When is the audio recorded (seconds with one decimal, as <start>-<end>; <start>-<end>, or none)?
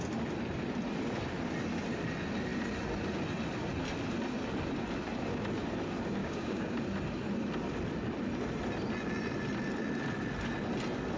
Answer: 0.0-6.2; 6.8-11.2